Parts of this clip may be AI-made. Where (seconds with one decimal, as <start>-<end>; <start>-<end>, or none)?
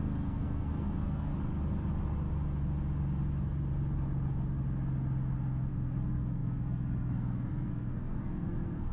0.0-1.3; 5.7-8.9